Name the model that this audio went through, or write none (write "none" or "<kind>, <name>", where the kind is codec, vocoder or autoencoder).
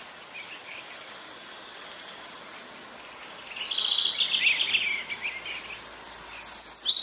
none